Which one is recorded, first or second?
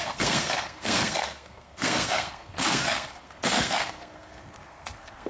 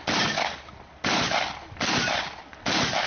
second